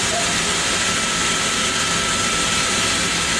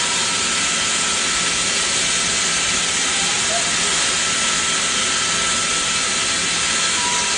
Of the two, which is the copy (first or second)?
first